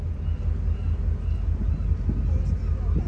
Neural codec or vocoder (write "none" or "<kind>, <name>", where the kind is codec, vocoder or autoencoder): none